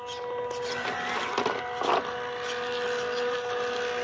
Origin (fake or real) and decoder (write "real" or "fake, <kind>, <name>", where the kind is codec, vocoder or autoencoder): real